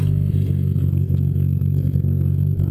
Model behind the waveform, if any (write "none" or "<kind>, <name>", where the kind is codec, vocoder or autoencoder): codec, SNAC